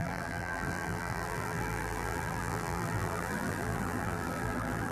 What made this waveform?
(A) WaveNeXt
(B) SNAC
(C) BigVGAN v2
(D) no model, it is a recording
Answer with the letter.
C